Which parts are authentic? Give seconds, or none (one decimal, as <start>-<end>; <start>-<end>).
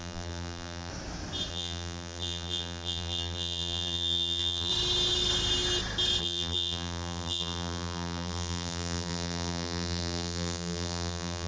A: 0.9-1.5; 4.7-6.2